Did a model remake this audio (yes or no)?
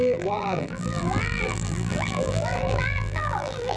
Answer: yes